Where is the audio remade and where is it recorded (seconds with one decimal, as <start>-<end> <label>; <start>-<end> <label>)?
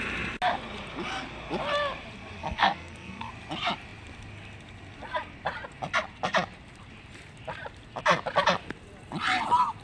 0.0-2.4 recorded; 2.4-3.3 remade; 3.3-9.8 recorded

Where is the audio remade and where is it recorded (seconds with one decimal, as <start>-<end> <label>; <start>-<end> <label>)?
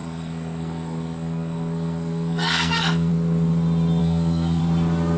0.0-3.1 remade; 3.1-4.0 recorded; 4.0-4.6 remade; 4.6-5.2 recorded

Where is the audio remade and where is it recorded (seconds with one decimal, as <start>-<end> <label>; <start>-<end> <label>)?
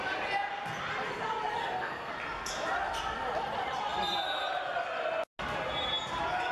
0.0-1.6 recorded; 1.6-2.1 remade; 2.1-6.5 recorded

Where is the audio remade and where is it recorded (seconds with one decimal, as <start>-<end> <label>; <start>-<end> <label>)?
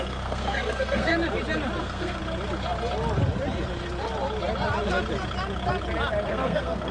0.0-1.1 remade; 1.1-1.8 recorded; 1.8-2.2 remade; 2.2-6.3 recorded; 6.3-6.9 remade